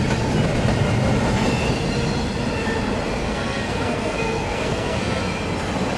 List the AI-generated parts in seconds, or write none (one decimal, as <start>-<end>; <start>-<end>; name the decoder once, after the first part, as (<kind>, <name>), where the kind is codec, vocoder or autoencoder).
3.2-5.2 (codec, SNAC)